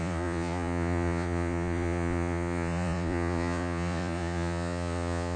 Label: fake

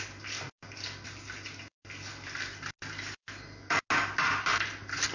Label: real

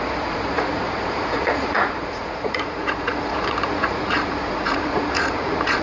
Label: fake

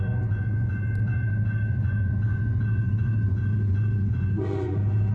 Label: fake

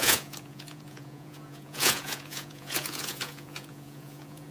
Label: fake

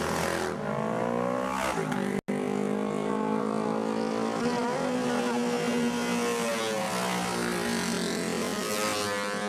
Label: real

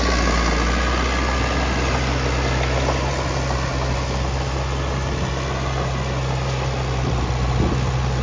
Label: real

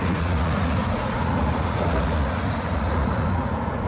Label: fake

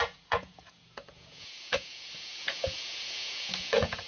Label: fake